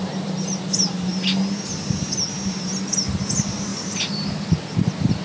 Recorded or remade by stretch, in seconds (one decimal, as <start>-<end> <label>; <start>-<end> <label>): 0.0-5.2 recorded